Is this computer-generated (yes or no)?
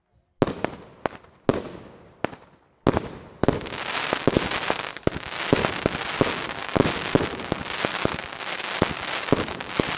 no